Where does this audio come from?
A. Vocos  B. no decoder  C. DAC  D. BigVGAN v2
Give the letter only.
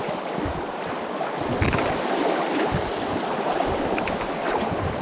B